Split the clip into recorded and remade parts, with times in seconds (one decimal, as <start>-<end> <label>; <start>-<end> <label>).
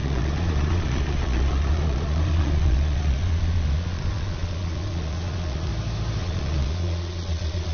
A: 0.0-5.7 remade; 5.7-6.2 recorded; 6.2-7.7 remade